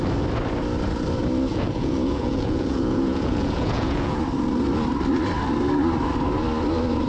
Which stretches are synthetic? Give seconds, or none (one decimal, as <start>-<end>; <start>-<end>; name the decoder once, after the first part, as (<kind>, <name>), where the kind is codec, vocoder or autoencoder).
1.5-4.2 (vocoder, Vocos)